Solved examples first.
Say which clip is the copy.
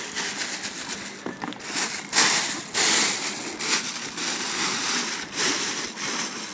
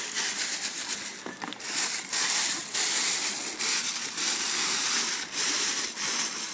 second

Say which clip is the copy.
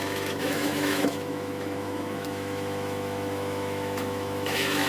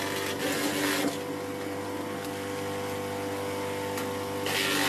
first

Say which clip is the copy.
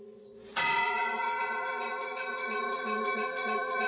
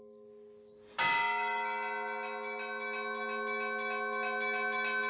first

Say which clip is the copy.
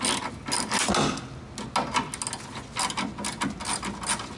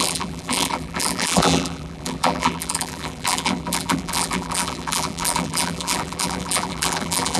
second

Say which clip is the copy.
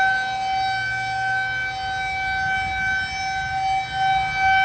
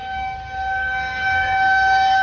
second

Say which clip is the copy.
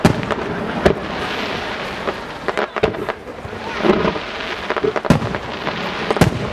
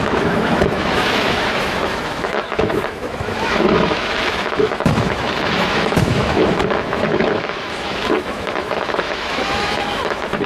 second